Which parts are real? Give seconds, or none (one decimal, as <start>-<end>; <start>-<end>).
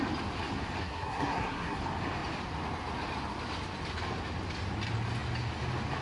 0.0-0.8; 1.8-6.0